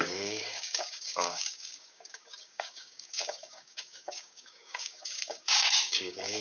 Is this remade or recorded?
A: remade